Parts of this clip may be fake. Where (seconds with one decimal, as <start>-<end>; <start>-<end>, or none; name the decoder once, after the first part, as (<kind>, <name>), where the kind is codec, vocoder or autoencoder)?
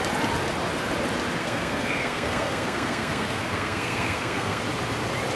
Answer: 1.4-4.6 (codec, SNAC)